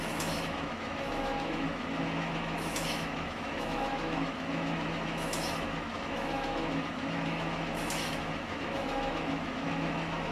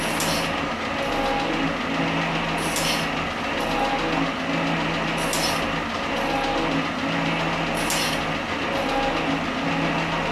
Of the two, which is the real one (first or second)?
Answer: second